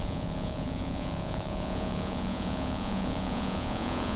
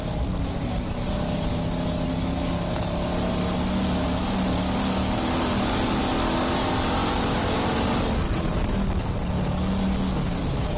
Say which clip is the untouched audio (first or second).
second